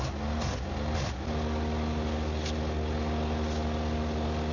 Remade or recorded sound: recorded